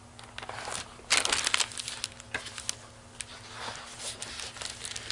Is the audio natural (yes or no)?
yes